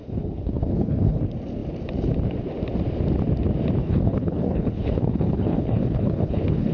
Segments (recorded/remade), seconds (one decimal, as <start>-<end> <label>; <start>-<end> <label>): 0.0-1.2 remade; 1.2-3.8 recorded; 3.8-6.7 remade

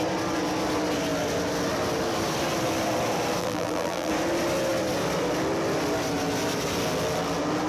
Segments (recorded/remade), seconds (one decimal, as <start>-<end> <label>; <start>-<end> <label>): 0.0-3.4 recorded; 3.4-4.1 remade; 4.1-7.7 recorded

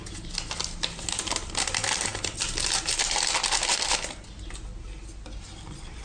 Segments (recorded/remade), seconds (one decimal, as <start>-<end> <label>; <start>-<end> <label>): 0.0-6.0 recorded

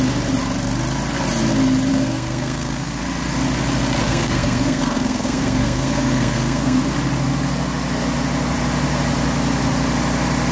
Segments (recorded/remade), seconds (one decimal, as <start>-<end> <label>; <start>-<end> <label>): 0.0-1.9 recorded; 1.9-3.0 remade; 3.0-4.0 recorded; 4.0-6.8 remade; 6.8-10.5 recorded